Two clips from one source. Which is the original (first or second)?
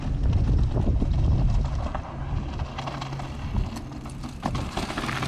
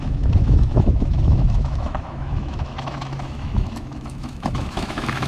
first